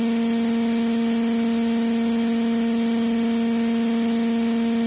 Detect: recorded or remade recorded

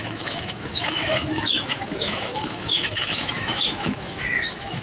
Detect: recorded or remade remade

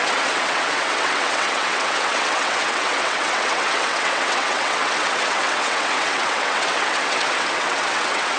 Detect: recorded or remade remade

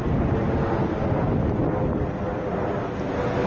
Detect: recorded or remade recorded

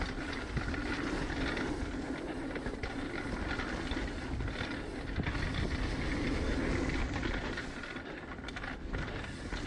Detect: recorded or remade recorded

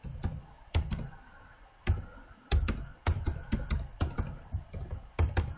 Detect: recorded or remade remade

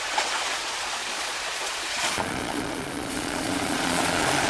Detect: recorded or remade remade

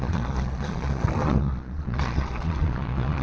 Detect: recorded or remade remade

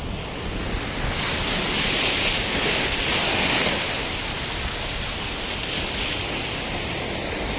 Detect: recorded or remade recorded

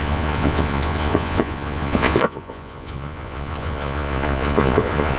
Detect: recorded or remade remade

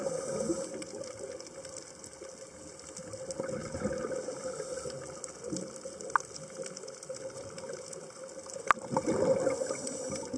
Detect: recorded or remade recorded